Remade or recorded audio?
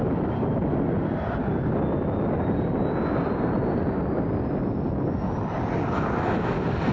recorded